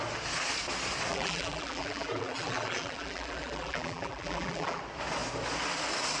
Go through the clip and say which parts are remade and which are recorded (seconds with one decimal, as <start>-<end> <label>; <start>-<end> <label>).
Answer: 0.0-1.1 recorded; 1.1-4.8 remade; 4.8-6.2 recorded